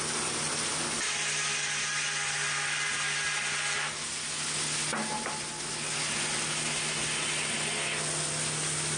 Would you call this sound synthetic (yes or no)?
no